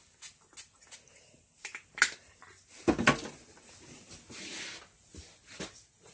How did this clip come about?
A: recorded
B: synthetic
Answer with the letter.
A